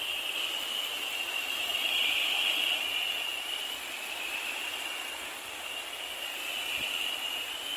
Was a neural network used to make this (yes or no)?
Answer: no